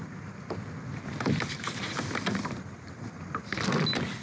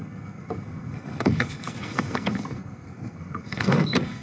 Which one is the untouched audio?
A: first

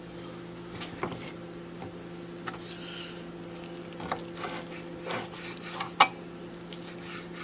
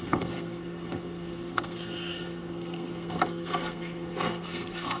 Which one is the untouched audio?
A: first